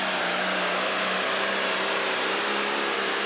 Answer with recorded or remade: recorded